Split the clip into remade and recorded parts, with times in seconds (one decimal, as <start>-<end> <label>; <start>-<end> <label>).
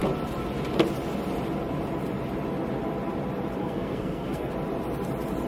0.0-3.6 recorded; 3.6-4.5 remade; 4.5-5.5 recorded